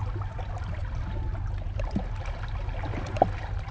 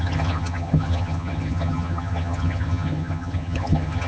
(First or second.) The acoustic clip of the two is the first